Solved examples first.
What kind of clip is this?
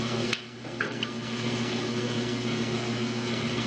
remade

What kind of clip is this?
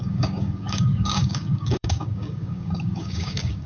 remade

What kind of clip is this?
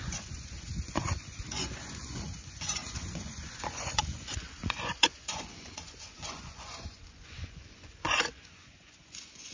remade